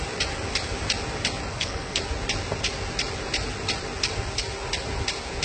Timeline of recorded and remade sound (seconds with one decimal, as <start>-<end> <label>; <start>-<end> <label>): 0.0-1.5 recorded; 1.5-2.0 remade; 2.0-5.4 recorded